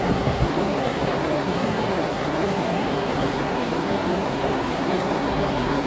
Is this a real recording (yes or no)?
no